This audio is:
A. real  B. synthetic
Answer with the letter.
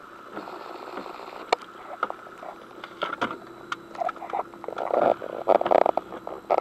A